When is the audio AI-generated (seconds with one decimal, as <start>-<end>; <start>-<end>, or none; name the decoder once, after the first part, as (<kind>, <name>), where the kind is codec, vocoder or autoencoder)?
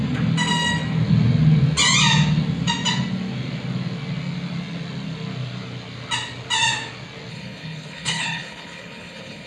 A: 7.3-9.5 (codec, HILCodec)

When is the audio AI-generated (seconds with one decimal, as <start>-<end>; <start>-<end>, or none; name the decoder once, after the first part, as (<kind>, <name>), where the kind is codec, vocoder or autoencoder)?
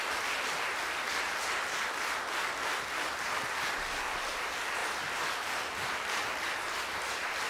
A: 4.8-5.9 (vocoder, BigVGAN v2)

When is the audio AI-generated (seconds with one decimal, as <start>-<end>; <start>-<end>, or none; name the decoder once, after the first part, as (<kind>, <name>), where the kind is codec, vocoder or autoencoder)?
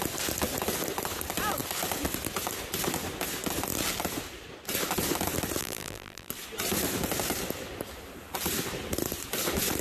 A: 5.6-6.3 (vocoder, BigVGAN v2)